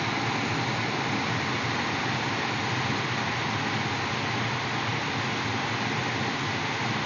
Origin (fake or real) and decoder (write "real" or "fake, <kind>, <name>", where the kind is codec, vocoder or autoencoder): real